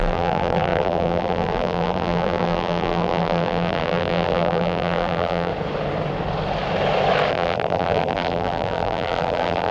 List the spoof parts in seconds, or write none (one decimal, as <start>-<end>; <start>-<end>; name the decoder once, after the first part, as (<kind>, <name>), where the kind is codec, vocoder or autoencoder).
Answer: 0.0-5.5 (vocoder, BigVGAN v2); 7.3-9.7